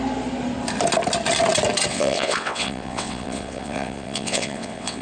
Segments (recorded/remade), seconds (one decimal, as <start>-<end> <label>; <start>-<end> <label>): 0.0-1.9 recorded; 1.9-5.0 remade